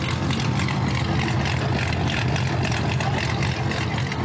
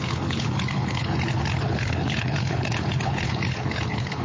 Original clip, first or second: first